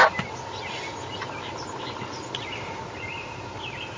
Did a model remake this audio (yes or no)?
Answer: no